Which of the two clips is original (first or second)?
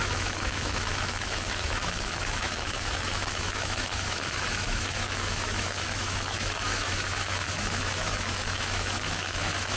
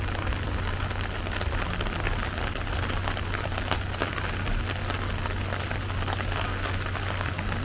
second